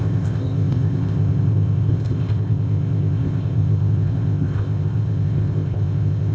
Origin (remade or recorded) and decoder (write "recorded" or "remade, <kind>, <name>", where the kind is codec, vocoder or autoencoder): remade, codec, ZipCodec